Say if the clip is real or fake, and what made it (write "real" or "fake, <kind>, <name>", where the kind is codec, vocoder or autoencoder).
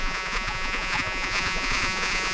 fake, vocoder, Vocos